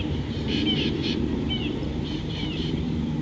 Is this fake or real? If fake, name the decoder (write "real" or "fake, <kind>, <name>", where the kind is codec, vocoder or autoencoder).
fake, vocoder, BigVGAN v2